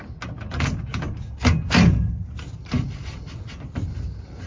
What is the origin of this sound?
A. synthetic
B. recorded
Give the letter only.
B